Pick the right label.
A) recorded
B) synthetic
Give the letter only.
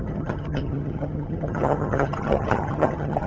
B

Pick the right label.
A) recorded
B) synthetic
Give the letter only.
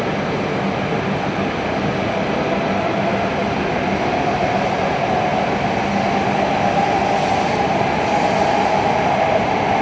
A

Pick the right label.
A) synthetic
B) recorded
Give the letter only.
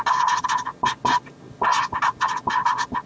B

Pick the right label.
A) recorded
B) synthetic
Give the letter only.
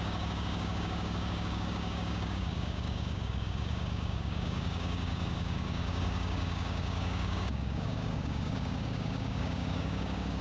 B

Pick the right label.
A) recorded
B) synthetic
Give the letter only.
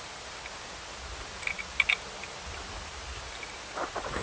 A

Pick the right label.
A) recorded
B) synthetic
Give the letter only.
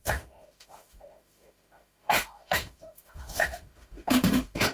B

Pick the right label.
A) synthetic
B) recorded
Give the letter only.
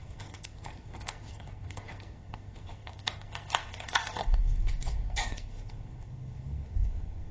A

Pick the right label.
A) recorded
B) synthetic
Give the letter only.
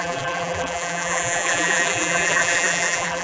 B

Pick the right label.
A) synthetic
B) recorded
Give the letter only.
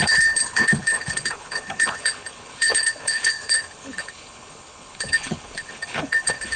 A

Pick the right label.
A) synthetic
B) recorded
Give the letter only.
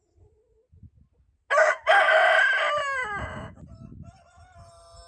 B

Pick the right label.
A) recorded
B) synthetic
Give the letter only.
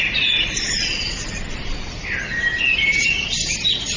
A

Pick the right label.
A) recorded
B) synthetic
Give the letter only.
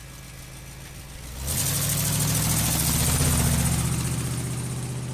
A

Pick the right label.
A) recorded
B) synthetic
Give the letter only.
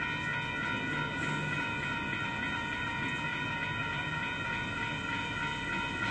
A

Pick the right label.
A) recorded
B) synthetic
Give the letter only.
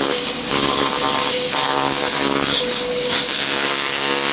B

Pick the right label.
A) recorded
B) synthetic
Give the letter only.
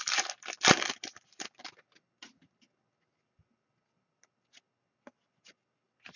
A